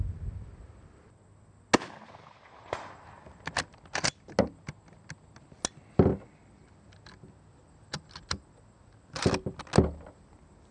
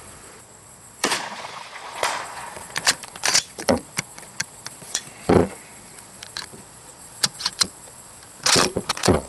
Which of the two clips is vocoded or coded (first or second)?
second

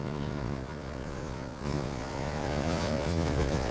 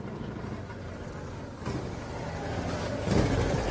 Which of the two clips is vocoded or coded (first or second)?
first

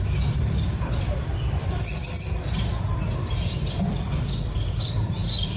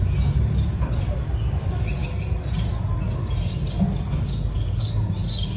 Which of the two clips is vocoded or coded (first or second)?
first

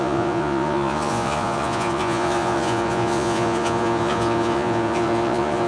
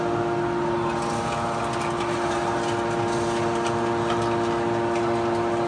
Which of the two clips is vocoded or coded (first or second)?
first